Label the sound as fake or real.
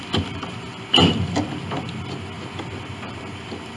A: fake